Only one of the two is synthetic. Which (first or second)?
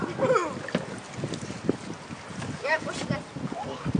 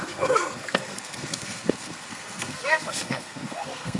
second